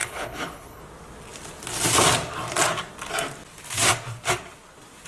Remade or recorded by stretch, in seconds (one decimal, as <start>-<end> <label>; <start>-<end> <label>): 0.0-0.8 remade; 0.8-5.1 recorded